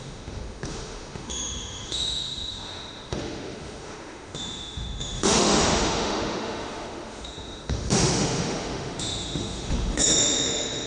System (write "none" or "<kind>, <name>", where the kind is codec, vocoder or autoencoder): autoencoder, DAC-VAE